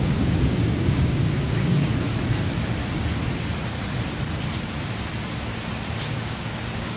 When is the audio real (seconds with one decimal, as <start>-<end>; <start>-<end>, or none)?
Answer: 1.9-6.1